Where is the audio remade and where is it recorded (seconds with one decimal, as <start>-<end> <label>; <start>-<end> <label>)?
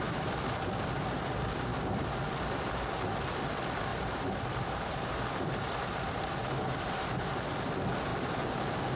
0.0-1.7 recorded; 1.7-2.7 remade; 2.7-3.9 recorded; 3.9-5.1 remade; 5.1-6.4 recorded; 6.4-7.2 remade; 7.2-8.1 recorded; 8.1-9.0 remade